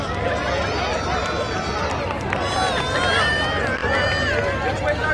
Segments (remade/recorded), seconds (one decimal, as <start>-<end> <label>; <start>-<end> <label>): 0.0-5.1 recorded